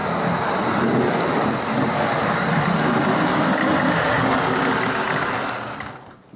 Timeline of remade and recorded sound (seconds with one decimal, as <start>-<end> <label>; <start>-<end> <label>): 0.0-6.4 recorded